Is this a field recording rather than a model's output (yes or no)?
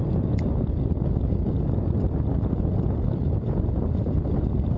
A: yes